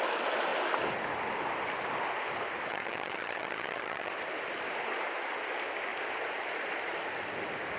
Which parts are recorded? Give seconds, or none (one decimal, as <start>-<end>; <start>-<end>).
0.0-2.7; 4.1-7.8